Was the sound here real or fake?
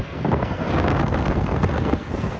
fake